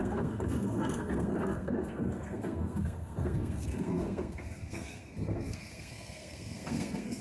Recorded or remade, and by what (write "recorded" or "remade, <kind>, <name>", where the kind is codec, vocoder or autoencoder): remade, codec, SNAC